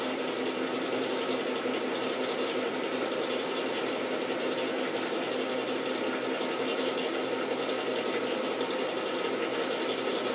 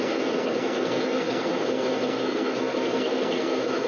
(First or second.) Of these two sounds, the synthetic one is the second